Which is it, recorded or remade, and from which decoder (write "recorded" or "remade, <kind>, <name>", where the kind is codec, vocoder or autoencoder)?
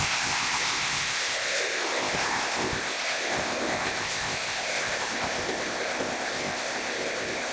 remade, codec, ZipCodec